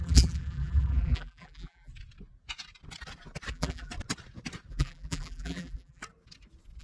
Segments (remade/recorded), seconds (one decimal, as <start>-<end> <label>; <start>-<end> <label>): 0.0-1.9 remade; 1.9-3.5 recorded; 3.5-3.9 remade; 3.9-4.7 recorded; 4.7-6.0 remade; 6.0-6.8 recorded